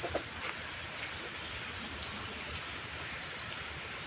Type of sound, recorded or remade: recorded